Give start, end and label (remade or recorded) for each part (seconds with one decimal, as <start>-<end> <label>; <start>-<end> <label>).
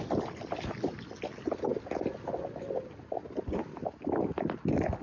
0.0-5.0 recorded